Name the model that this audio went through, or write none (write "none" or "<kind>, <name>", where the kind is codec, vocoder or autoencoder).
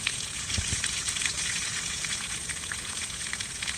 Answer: vocoder, Vocos